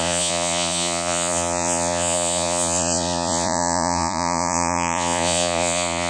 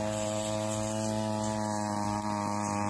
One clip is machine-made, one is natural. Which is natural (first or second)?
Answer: second